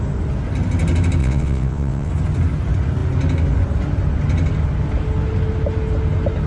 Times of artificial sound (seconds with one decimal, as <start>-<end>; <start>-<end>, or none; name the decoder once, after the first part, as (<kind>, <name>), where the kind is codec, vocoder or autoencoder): 1.2-2.1 (vocoder, WaveNeXt)